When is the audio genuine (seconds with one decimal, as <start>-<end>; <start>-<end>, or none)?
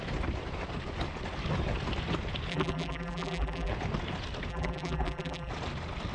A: 0.0-2.5; 3.7-4.5; 5.5-6.1